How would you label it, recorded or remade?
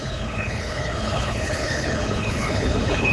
remade